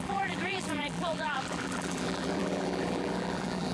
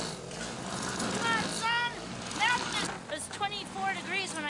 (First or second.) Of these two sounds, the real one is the second